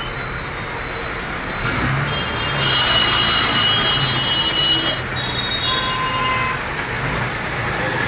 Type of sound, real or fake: real